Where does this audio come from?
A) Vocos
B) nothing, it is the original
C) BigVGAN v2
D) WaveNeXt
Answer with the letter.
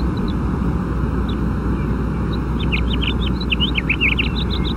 B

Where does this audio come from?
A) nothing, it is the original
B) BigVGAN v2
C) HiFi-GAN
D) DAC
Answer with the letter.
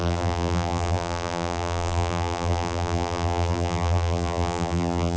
B